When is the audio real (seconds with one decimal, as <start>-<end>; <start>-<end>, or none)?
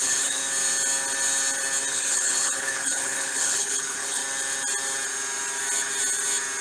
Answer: 0.4-1.9; 4.2-6.6